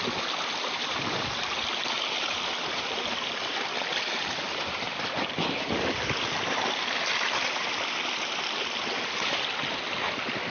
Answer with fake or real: real